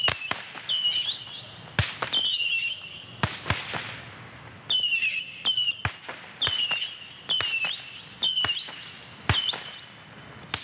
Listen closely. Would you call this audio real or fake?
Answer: real